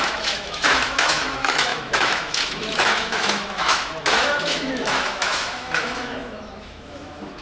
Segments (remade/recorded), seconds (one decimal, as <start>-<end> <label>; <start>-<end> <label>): 0.0-7.4 remade